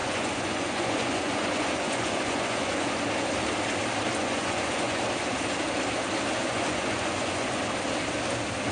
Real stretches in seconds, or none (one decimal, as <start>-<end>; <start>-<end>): 3.0-4.2; 5.0-6.4; 7.6-8.7